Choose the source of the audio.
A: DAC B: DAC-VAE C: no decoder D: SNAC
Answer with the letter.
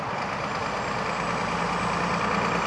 C